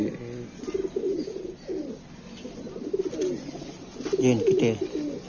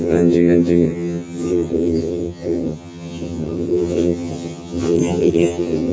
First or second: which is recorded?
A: first